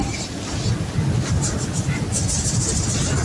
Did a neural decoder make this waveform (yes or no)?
no